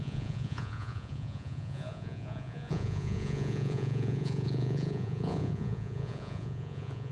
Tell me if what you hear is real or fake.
fake